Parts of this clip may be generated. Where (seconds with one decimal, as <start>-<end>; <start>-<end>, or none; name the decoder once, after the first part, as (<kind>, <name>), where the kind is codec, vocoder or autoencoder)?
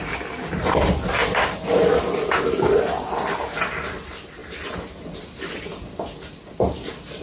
none